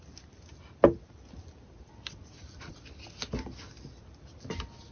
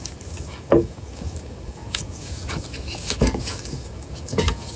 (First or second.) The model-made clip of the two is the second